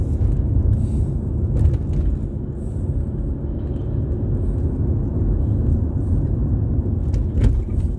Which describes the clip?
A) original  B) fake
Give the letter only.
A